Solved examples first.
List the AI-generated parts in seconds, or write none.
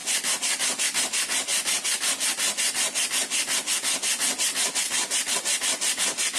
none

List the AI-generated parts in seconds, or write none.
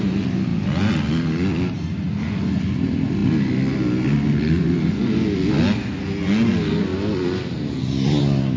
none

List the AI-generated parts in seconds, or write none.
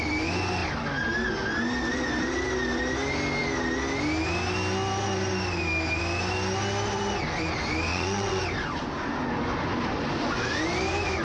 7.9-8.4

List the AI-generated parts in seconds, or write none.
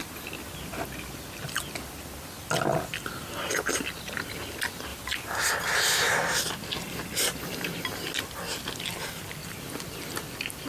4.9-5.5; 9.4-10.1